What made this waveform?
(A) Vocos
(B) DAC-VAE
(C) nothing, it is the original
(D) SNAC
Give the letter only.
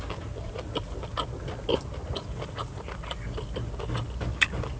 C